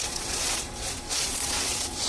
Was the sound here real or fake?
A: fake